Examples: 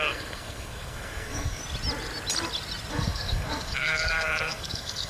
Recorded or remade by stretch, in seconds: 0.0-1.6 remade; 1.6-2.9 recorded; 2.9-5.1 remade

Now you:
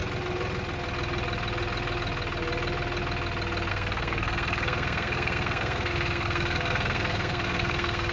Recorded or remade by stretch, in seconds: 0.0-3.7 recorded; 3.7-8.1 remade

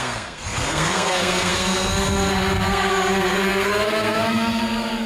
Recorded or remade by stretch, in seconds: 0.0-5.1 remade

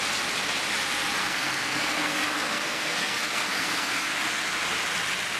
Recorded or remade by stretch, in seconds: 0.0-1.2 recorded; 1.2-4.4 remade; 4.4-5.4 recorded